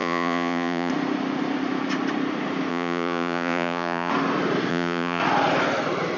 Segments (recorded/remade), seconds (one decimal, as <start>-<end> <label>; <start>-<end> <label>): 0.0-0.9 remade; 0.9-2.7 recorded; 2.7-4.1 remade; 4.1-4.7 recorded; 4.7-5.2 remade; 5.2-6.2 recorded